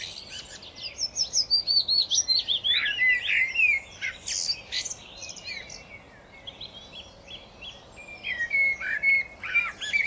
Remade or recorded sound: recorded